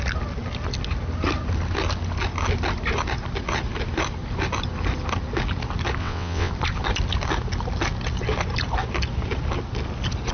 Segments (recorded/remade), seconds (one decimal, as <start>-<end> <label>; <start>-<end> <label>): 0.0-6.0 recorded; 6.0-6.5 remade; 6.5-10.3 recorded